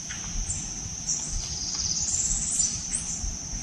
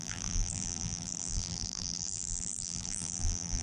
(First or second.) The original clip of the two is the first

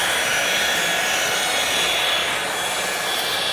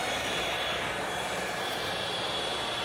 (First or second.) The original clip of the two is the first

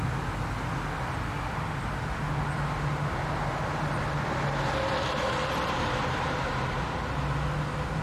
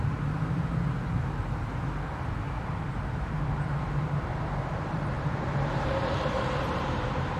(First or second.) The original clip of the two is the first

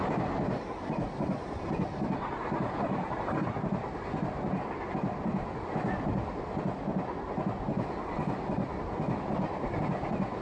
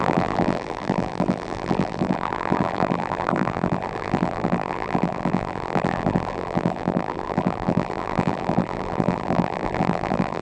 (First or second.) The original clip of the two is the first